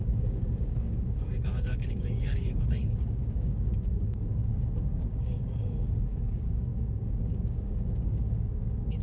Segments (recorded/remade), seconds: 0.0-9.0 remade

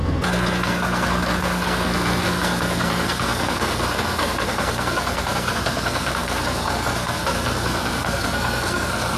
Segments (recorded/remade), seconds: 0.0-9.2 remade

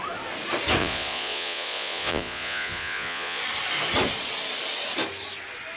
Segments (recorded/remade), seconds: 0.0-0.8 recorded; 0.8-3.4 remade; 3.4-5.8 recorded